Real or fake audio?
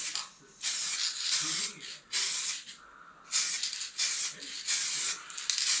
real